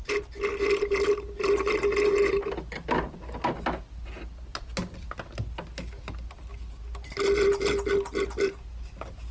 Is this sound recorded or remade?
recorded